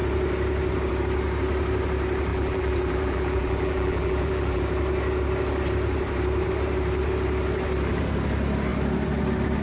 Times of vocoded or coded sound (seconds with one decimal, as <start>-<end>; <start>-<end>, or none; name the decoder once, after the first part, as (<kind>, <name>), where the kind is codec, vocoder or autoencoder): 2.3-4.6 (vocoder, BigVGAN v2)